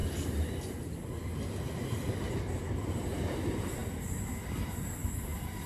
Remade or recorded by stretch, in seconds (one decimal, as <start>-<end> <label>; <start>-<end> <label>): 0.0-5.7 recorded